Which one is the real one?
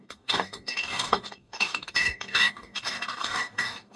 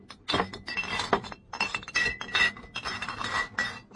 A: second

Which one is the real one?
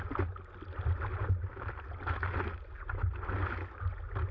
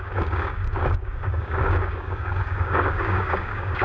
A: first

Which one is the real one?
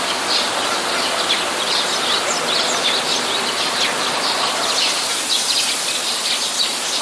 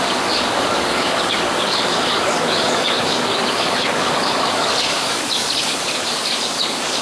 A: first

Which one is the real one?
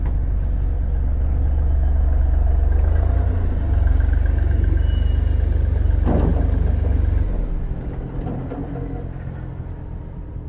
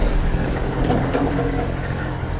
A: first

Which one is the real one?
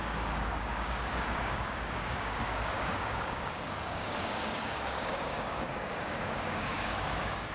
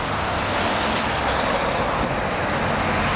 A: second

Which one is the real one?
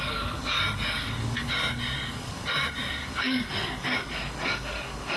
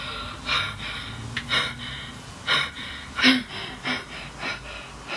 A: second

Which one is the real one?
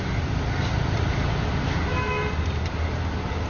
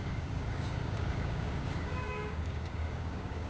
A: first